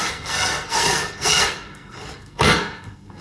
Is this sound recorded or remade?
remade